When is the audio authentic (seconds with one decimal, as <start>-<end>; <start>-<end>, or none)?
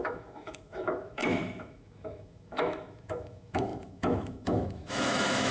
none